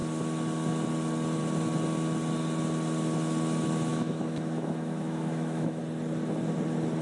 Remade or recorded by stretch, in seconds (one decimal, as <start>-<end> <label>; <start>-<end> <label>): 0.0-3.9 recorded; 3.9-5.8 remade; 5.8-7.0 recorded

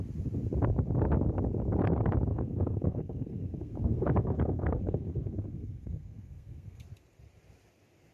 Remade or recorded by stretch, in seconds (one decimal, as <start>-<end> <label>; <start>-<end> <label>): 0.0-2.3 recorded; 2.3-6.8 remade; 6.8-8.1 recorded

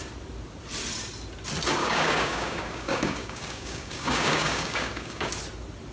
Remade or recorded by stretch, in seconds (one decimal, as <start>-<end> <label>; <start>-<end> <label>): 0.0-1.8 recorded; 1.8-5.3 remade; 5.3-5.9 recorded

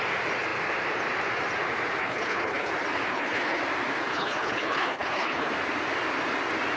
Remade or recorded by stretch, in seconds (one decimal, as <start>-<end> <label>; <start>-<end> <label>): 0.0-2.0 recorded; 2.0-2.7 remade; 2.7-3.1 recorded; 3.1-3.6 remade; 3.6-4.1 recorded; 4.1-5.5 remade; 5.5-6.8 recorded

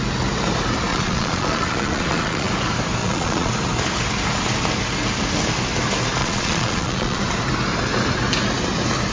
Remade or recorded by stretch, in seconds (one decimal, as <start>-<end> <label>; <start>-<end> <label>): 0.0-0.9 recorded; 0.9-2.5 remade; 2.5-3.0 recorded; 3.0-3.5 remade; 3.5-6.2 recorded; 6.2-7.2 remade; 7.2-9.1 recorded